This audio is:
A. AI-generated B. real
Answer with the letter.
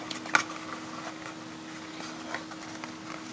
B